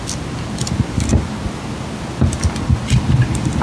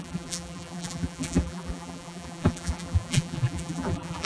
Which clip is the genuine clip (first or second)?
first